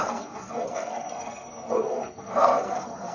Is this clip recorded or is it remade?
remade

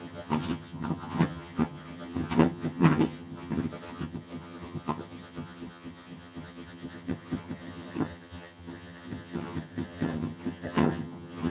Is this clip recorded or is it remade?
remade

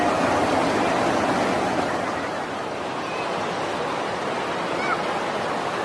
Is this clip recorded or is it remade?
recorded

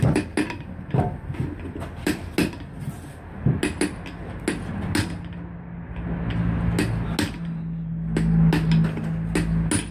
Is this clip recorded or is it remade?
recorded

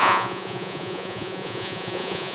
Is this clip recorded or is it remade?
remade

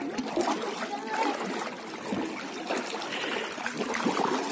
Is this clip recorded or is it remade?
recorded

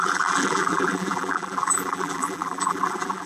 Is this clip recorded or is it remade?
remade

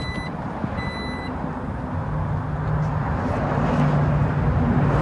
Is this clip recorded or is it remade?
recorded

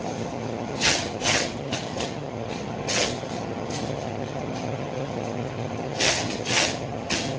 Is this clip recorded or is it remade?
remade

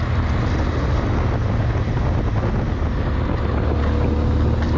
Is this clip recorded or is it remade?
recorded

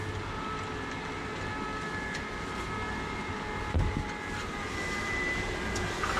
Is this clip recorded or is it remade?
recorded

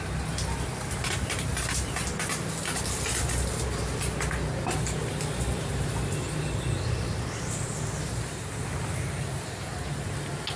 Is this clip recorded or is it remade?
recorded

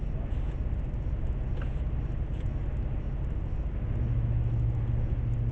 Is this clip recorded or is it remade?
recorded